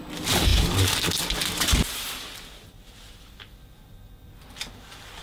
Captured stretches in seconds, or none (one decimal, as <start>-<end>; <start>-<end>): 0.0-5.2